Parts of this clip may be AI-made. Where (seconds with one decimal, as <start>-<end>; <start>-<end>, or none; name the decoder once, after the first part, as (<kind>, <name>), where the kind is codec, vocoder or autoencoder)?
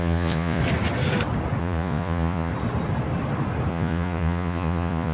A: 0.0-0.6 (vocoder, Vocos); 1.6-2.5; 3.7-5.1